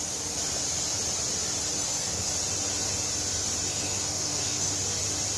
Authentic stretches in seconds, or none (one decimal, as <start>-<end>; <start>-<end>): 0.0-1.8; 2.3-3.7; 4.7-5.4